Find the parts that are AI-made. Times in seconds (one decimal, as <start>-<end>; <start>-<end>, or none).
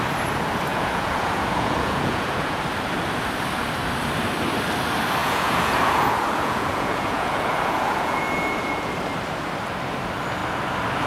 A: 0.7-2.6; 5.2-8.9